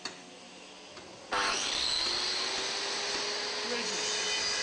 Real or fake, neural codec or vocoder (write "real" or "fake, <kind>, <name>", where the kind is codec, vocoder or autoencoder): real